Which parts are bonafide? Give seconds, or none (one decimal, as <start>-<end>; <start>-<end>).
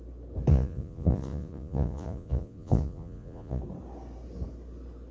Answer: 0.0-0.5; 3.6-5.1